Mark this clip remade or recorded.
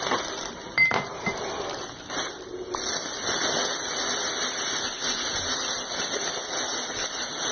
recorded